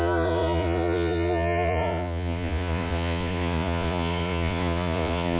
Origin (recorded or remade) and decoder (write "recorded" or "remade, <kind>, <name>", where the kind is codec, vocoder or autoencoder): remade, vocoder, Vocos